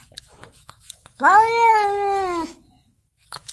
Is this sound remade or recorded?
remade